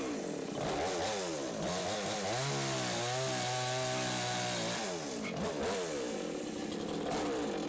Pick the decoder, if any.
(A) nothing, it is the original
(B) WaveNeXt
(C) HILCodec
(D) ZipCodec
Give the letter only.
A